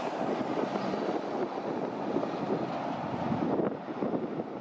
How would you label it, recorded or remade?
recorded